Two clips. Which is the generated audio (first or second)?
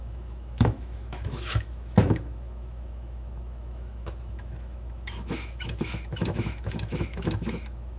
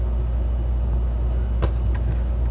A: first